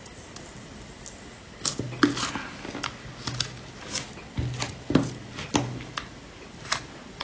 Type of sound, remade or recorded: recorded